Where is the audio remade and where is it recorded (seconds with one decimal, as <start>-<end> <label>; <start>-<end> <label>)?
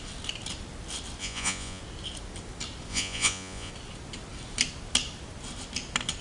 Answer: 0.0-1.2 recorded; 1.2-1.8 remade; 1.8-2.9 recorded; 2.9-3.7 remade; 3.7-6.2 recorded